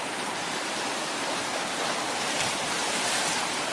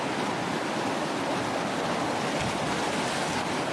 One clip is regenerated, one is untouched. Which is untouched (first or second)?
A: second